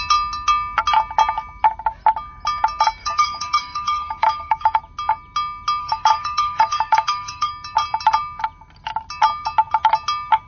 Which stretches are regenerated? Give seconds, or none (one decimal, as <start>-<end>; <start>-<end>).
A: 3.0-4.8; 5.8-7.5